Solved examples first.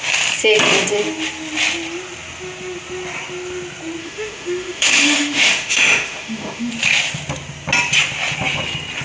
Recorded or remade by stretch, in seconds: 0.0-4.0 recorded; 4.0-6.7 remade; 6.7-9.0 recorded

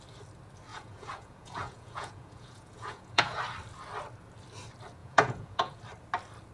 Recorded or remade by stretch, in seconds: 0.0-0.7 recorded; 0.7-3.4 remade; 3.4-5.0 recorded; 5.0-5.8 remade; 5.8-6.5 recorded

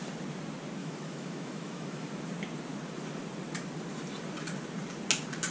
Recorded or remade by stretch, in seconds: 0.0-0.8 recorded; 0.8-2.1 remade; 2.1-5.5 recorded

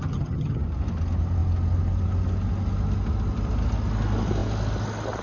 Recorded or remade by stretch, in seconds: 0.0-0.6 remade; 0.6-5.2 recorded

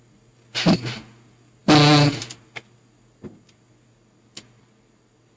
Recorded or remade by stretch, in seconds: 0.0-5.4 recorded

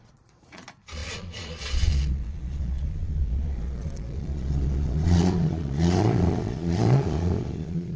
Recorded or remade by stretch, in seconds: 0.0-8.0 remade

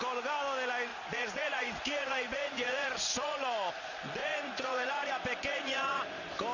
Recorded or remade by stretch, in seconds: 0.0-0.9 recorded; 0.9-3.7 remade; 3.7-4.2 recorded; 4.2-5.1 remade; 5.1-5.5 recorded; 5.5-6.0 remade; 6.0-6.5 recorded